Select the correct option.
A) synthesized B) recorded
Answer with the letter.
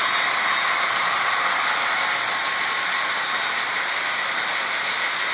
B